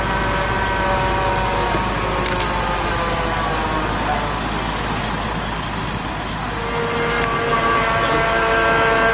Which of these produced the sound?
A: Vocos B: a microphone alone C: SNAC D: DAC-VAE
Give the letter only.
B